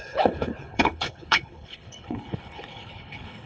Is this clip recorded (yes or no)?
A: no